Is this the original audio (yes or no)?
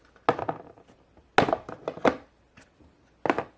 yes